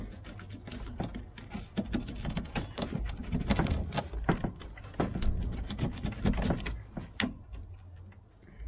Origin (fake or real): real